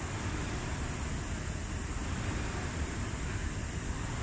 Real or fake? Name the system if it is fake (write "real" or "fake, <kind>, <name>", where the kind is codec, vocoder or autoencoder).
real